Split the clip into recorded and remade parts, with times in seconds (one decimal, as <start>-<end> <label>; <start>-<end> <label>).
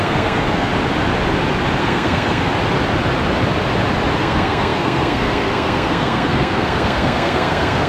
0.0-0.7 remade; 0.7-1.8 recorded; 1.8-2.5 remade; 2.5-4.2 recorded; 4.2-7.9 remade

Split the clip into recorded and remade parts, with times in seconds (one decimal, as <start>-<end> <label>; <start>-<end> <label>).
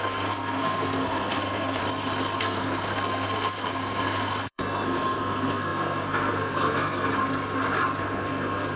0.0-1.8 remade; 1.8-2.4 recorded; 2.4-7.2 remade; 7.2-8.0 recorded; 8.0-8.8 remade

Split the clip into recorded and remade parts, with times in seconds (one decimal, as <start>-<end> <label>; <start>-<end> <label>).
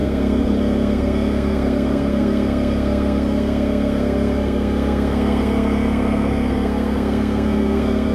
0.0-8.1 remade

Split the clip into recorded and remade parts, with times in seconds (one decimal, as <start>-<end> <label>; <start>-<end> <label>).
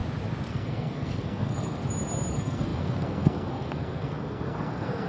0.0-0.5 recorded; 0.5-1.8 remade; 1.8-2.3 recorded; 2.3-5.1 remade